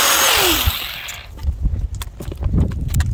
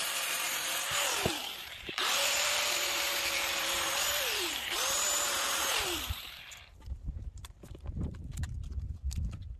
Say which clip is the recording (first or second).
first